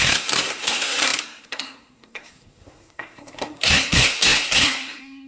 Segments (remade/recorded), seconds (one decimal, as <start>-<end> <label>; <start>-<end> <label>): 0.0-5.3 remade